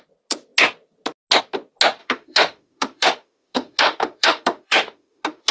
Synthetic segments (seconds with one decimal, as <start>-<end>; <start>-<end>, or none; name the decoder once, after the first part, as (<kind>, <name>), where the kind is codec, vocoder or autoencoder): 2.0-5.5 (autoencoder, DAC-VAE)